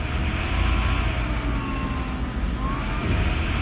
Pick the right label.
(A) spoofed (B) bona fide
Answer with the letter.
B